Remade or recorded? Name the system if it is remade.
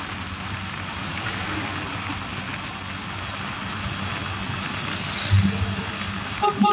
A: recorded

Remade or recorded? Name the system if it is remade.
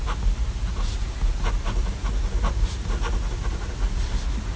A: recorded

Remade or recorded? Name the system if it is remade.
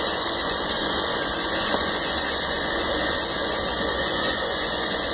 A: remade, vocoder, Vocos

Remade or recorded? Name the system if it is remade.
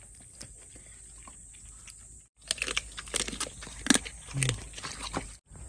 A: recorded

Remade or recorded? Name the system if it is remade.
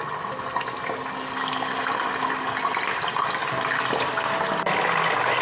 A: recorded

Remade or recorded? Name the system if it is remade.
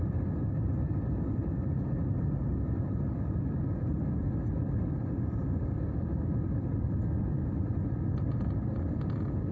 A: recorded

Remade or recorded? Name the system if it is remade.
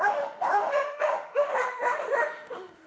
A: remade, autoencoder, DAC-VAE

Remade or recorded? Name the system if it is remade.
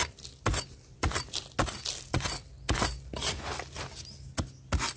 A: recorded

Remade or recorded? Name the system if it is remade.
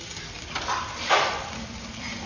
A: recorded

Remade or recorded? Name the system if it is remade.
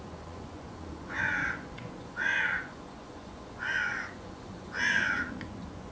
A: remade, vocoder, Vocos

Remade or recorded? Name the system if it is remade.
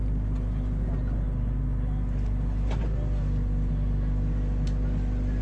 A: recorded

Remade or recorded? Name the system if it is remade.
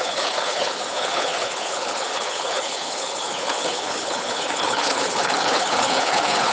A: remade, codec, HILCodec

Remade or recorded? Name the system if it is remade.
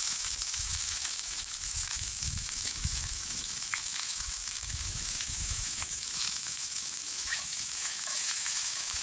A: remade, autoencoder, DAC-VAE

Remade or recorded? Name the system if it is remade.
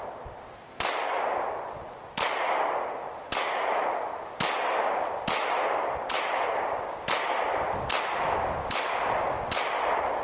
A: recorded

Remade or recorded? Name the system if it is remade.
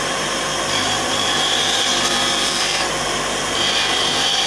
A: remade, vocoder, BigVGAN v2